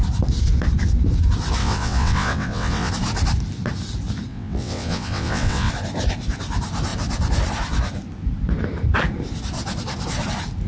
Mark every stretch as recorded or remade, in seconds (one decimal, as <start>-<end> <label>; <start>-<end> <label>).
0.0-1.6 recorded; 1.6-2.9 remade; 2.9-4.3 recorded; 4.3-5.7 remade; 5.7-10.7 recorded